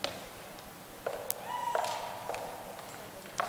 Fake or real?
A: real